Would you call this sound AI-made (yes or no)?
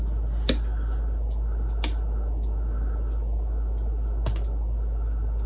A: no